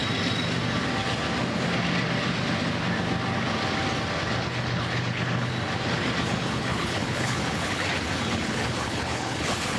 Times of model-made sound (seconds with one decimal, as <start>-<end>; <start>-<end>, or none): 4.4-5.5; 6.3-9.8